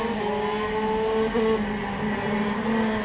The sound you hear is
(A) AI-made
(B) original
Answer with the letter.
B